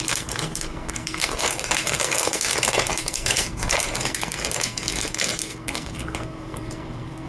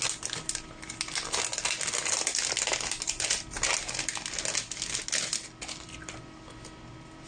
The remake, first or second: first